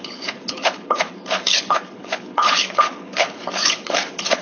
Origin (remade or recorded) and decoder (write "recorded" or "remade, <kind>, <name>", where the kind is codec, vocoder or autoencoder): remade, codec, HILCodec